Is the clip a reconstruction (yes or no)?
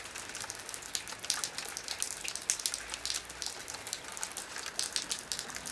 no